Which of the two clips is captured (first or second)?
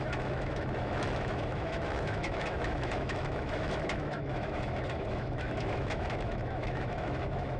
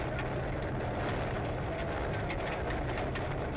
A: second